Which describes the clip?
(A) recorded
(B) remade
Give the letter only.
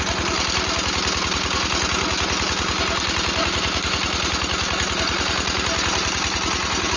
A